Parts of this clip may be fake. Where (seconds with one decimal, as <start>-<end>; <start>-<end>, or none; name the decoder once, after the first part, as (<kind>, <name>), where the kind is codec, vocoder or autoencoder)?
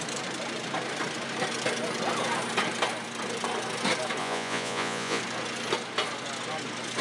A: 4.2-5.2 (vocoder, Vocos)